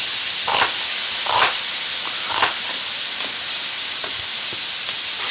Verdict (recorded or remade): remade